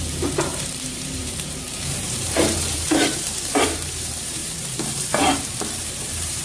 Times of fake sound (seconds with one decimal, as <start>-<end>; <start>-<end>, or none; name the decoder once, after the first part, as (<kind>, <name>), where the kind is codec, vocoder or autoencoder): 0.0-6.4 (vocoder, BigVGAN v2)